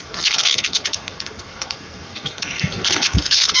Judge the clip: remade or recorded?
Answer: remade